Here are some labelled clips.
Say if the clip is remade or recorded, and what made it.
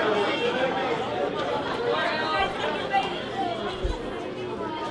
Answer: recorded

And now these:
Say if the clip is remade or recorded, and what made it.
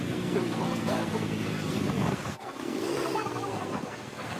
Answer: remade, codec, SNAC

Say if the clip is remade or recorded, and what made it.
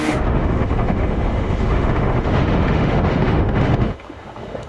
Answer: remade, autoencoder, DAC-VAE